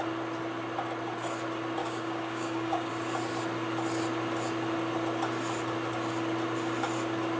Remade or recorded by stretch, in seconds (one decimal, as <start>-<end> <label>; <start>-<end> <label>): 0.0-1.8 recorded; 1.8-2.9 remade; 2.9-7.4 recorded